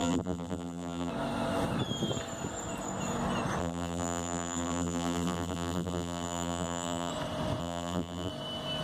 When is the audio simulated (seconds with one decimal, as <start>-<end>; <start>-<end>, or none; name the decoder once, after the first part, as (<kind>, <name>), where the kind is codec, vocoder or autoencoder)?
0.0-1.1 (vocoder, BigVGAN v2); 3.6-7.1; 7.6-8.3